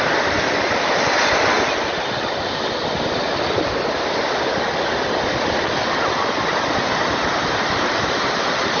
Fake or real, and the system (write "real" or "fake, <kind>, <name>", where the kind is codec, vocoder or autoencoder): real